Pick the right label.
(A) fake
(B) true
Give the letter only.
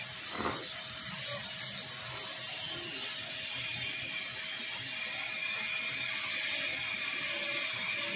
B